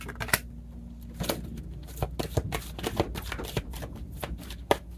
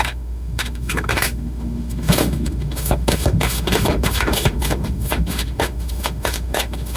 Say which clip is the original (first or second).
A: first